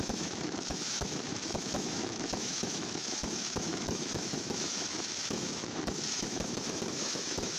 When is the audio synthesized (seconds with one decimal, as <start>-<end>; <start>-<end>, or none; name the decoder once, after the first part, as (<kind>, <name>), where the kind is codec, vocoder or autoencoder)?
0.0-7.6 (autoencoder, DAC-VAE)